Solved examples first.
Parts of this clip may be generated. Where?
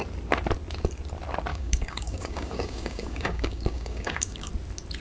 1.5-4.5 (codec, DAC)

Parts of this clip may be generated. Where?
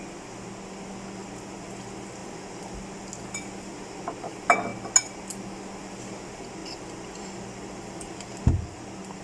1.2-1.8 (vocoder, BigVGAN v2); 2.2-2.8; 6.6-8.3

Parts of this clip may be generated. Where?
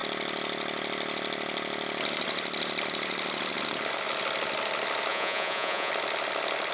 5.1-5.9 (vocoder, Vocos)